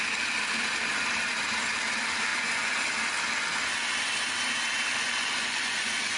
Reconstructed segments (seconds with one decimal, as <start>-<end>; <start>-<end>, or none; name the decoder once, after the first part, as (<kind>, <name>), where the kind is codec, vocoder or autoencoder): 2.3-2.8 (vocoder, Vocos); 4.9-6.2